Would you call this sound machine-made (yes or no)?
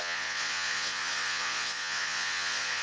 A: yes